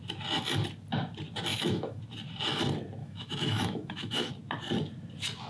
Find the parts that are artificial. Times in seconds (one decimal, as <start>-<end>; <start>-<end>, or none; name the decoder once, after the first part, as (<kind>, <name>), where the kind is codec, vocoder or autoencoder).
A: 1.5-2.0 (autoencoder, DAC-VAE); 3.0-4.3